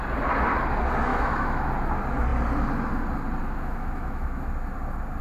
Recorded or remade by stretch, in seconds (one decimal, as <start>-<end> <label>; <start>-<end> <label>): 0.0-1.1 recorded; 1.1-1.7 remade; 1.7-3.4 recorded; 3.4-4.5 remade; 4.5-5.2 recorded